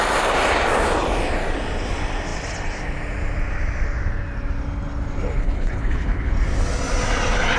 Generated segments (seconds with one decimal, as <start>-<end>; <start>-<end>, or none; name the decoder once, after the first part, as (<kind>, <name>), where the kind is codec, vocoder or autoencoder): 5.4-6.3 (codec, HILCodec)